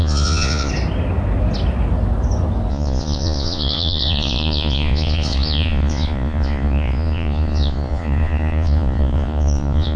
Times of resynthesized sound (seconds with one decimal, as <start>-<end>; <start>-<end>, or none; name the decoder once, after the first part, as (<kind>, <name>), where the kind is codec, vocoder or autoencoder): 0.0-0.7 (vocoder, Vocos); 2.7-10.0